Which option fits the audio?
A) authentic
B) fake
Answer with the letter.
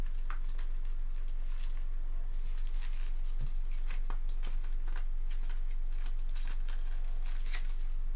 A